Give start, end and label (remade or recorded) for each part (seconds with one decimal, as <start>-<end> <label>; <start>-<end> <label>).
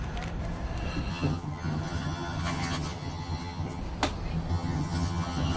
0.0-1.1 recorded; 1.1-3.8 remade; 3.8-4.5 recorded; 4.5-5.6 remade